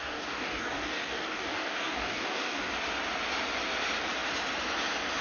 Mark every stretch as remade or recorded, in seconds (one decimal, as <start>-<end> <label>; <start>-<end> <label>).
0.0-2.7 remade; 2.7-5.2 recorded